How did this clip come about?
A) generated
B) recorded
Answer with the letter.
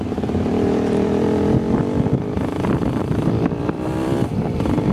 A